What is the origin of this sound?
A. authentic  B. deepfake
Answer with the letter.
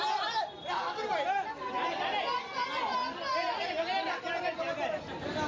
A